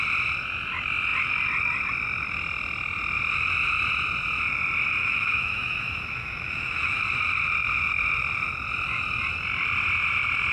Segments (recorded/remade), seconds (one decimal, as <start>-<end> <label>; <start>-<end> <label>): 0.0-5.0 recorded; 5.0-7.0 remade; 7.0-10.5 recorded